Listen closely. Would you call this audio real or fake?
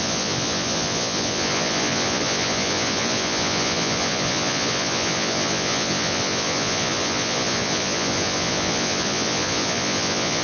fake